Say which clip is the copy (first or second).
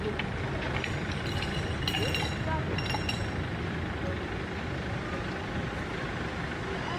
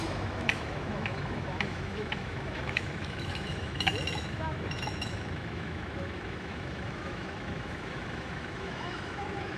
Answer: second